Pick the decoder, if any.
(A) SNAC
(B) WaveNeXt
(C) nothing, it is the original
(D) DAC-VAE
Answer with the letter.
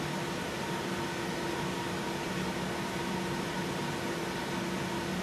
C